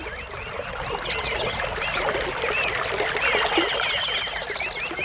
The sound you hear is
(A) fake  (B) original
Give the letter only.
B